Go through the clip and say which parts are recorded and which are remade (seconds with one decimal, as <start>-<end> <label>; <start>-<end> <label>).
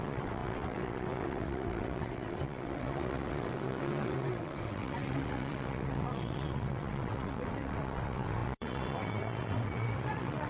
0.0-10.5 remade